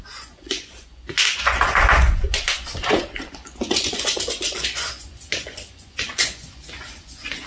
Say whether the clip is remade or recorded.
remade